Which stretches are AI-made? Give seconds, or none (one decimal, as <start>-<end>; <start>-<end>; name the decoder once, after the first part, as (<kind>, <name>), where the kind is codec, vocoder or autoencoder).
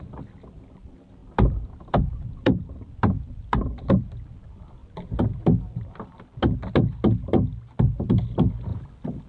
0.0-4.8 (vocoder, BigVGAN v2); 7.9-8.7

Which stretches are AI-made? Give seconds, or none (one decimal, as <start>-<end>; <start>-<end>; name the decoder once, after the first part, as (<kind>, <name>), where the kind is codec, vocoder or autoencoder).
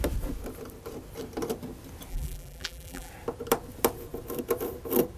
2.1-3.1 (vocoder, BigVGAN v2)